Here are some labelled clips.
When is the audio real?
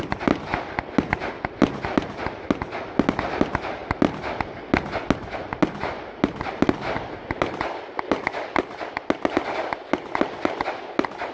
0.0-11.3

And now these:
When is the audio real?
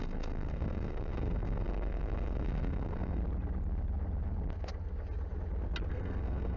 3.2-5.9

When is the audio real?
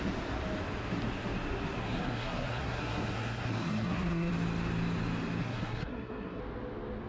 0.0-1.8; 4.3-5.4; 6.4-7.1